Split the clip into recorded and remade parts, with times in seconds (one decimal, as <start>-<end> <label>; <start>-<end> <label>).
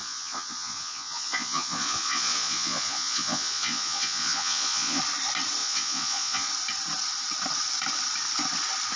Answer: 0.0-5.0 remade; 5.0-5.6 recorded; 5.6-6.5 remade; 6.5-9.0 recorded